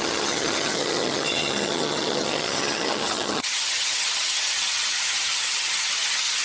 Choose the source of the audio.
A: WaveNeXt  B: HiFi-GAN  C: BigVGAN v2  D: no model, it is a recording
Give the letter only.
B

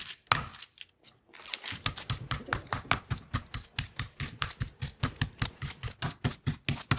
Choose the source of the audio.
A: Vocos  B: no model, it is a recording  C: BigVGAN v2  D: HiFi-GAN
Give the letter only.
B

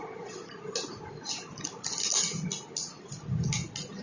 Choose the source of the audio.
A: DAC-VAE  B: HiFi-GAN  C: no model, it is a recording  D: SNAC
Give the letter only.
C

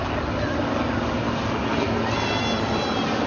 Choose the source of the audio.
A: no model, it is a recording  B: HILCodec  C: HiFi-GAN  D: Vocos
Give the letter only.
A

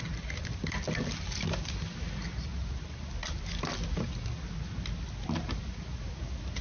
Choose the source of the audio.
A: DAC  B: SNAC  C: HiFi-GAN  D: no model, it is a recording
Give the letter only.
D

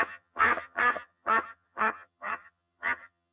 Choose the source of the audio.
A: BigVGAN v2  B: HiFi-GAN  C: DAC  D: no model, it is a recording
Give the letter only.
B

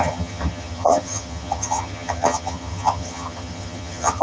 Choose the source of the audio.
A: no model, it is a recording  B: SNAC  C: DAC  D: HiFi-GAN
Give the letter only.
D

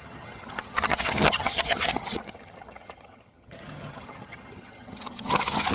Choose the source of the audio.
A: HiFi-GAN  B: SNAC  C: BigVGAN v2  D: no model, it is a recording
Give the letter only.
A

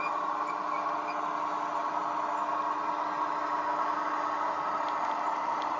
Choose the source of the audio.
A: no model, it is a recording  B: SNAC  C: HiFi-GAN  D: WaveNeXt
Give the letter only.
A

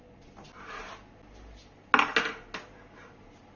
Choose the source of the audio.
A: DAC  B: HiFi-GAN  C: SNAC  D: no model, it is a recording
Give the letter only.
D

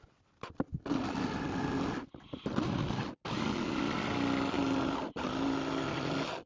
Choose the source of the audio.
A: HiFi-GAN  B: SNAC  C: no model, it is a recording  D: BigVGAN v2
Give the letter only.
C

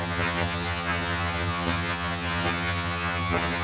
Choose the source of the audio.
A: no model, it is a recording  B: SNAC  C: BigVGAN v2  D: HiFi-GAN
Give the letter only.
D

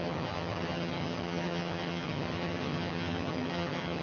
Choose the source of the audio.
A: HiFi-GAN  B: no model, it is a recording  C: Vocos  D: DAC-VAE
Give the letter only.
A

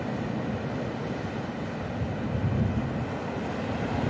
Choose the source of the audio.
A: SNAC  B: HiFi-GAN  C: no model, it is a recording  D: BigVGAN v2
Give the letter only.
C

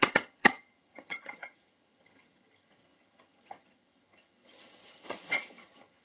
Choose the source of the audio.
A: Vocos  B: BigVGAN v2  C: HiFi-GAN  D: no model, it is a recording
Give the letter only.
C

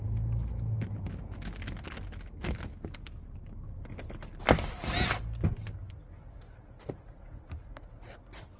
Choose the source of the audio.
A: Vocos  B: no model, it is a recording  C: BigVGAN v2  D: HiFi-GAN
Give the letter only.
B